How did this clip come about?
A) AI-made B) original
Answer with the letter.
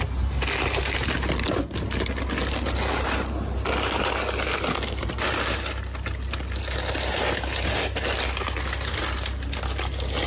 B